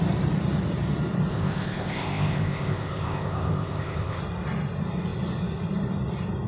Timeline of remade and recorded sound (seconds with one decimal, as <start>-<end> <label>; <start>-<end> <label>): 0.0-1.3 recorded; 1.3-4.2 remade; 4.2-6.5 recorded